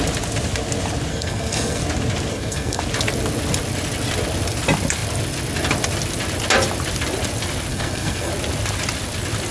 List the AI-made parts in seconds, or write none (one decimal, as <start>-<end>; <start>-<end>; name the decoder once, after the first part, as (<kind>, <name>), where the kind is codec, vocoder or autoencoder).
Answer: 1.1-1.8 (codec, SNAC); 2.3-2.8; 7.7-8.3

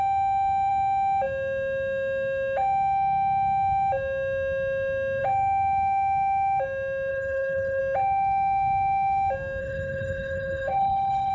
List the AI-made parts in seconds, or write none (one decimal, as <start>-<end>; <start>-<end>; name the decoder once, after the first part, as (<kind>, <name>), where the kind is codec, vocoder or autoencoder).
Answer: 7.1-7.8 (codec, HILCodec); 9.6-11.3

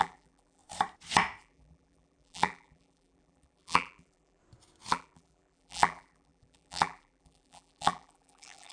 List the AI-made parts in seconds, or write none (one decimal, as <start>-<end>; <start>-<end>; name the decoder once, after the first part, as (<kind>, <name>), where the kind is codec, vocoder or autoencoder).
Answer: 0.0-0.6 (vocoder, BigVGAN v2); 1.4-4.4; 4.9-8.7

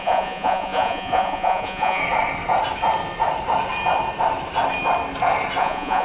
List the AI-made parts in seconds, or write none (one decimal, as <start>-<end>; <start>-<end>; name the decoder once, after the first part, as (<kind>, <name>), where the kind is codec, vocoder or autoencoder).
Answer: 0.0-2.0 (vocoder, Vocos); 5.6-6.0